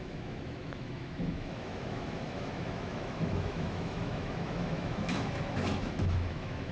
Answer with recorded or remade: remade